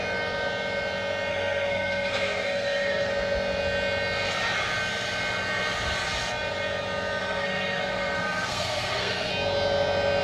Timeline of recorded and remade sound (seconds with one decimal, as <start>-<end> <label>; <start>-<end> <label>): 0.0-1.3 recorded; 1.3-3.1 remade; 3.1-7.2 recorded; 7.2-9.3 remade; 9.3-10.2 recorded